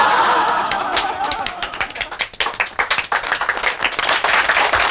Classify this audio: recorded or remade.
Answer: recorded